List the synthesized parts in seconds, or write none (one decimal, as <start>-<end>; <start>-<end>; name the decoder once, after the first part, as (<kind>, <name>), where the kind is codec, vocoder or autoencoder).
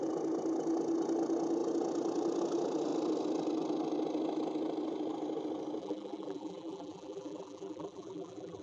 5.8-8.6 (vocoder, BigVGAN v2)